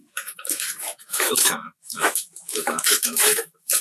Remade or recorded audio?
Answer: remade